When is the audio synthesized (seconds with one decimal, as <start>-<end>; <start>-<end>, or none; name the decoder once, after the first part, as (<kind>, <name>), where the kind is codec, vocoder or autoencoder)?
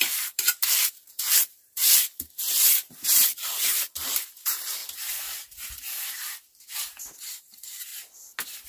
0.0-4.8 (vocoder, BigVGAN v2); 7.4-7.9